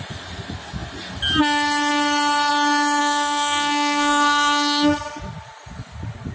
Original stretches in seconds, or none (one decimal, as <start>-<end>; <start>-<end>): 0.0-3.0; 5.2-6.3